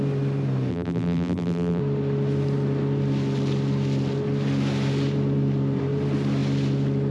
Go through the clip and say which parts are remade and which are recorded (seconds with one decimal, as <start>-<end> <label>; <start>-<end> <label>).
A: 0.0-0.7 recorded; 0.7-1.8 remade; 1.8-7.1 recorded